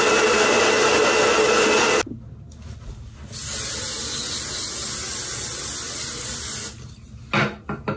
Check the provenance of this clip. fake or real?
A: real